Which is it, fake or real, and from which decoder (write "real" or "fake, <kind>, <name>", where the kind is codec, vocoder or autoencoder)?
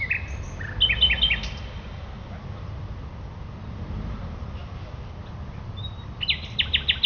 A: real